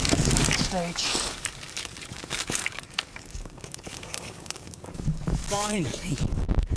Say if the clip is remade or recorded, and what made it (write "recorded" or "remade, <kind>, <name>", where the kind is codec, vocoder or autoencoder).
remade, codec, DAC